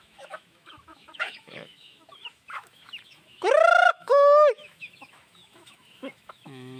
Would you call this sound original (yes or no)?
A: no